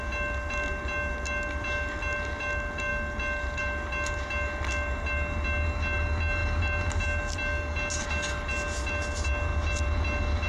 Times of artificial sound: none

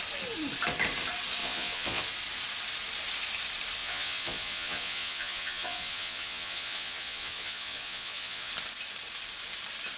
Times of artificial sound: 1.4-2.0 (vocoder, Vocos); 3.8-8.5

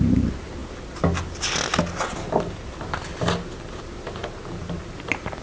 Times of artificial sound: none

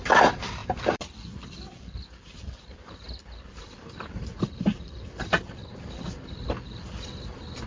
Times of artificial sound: none

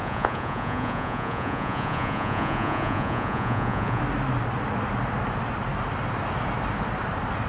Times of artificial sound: 0.0-4.0 (vocoder, Vocos)

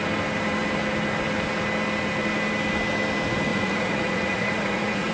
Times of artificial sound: 3.5-5.1 (vocoder, Vocos)

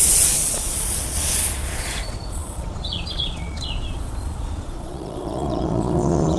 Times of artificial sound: 0.0-6.4 (vocoder, Vocos)